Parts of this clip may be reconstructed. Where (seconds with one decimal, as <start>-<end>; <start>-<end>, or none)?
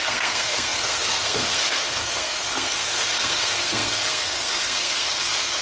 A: 0.0-5.6